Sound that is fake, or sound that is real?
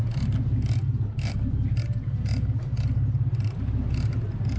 real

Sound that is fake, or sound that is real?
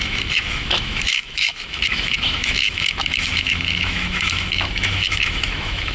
fake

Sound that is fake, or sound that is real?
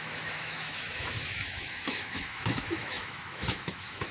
fake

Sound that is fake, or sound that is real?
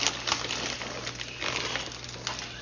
real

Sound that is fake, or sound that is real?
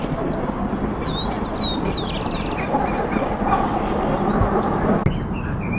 real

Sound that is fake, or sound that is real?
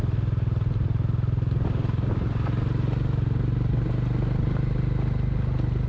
real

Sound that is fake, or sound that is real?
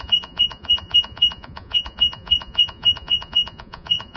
fake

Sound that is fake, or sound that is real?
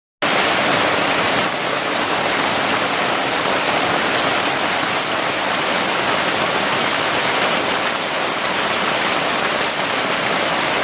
real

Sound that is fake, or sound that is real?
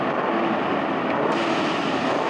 real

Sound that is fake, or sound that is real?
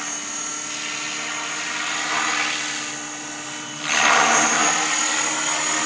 real